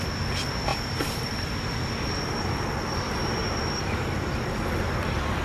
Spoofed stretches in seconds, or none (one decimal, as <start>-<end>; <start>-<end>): 0.7-1.6; 3.4-4.0